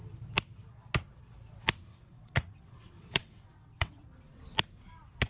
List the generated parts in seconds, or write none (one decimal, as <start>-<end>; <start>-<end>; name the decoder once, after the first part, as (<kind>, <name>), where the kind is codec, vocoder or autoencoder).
1.9-4.0 (vocoder, WaveNeXt)